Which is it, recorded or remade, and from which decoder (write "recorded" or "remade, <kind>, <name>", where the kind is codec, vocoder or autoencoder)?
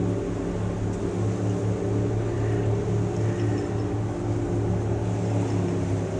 recorded